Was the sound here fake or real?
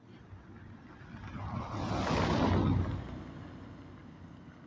real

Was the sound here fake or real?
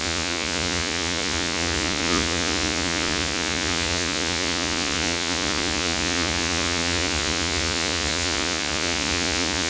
fake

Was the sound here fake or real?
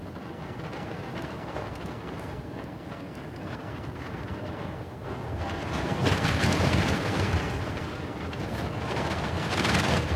fake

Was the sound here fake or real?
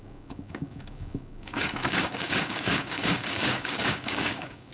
fake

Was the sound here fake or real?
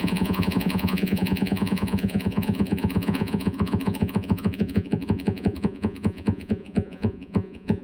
fake